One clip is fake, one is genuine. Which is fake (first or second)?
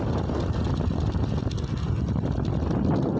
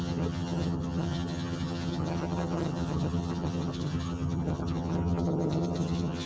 second